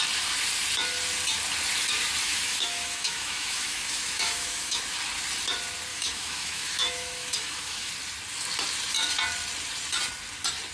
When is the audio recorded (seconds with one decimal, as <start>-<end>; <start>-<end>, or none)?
0.0-2.2; 4.8-5.9; 7.9-10.7